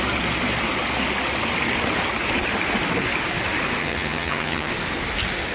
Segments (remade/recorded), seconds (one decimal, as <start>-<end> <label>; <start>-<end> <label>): 0.0-3.8 recorded; 3.8-4.7 remade; 4.7-5.5 recorded